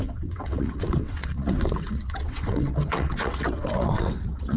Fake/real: fake